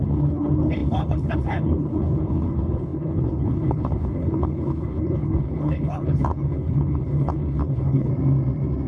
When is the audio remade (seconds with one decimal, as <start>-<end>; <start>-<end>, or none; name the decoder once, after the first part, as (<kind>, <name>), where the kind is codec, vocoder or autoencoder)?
0.0-8.1 (codec, HILCodec)